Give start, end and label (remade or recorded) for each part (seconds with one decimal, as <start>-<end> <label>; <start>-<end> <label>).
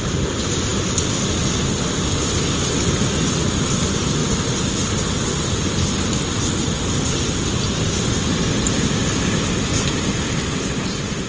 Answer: 0.0-0.7 remade; 0.7-1.4 recorded; 1.4-4.2 remade; 4.2-9.2 recorded; 9.2-9.7 remade; 9.7-10.4 recorded; 10.4-11.3 remade